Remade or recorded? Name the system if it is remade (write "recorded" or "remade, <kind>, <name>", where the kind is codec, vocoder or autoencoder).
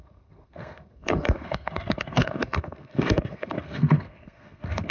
remade, codec, SNAC